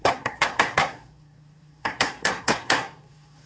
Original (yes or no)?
no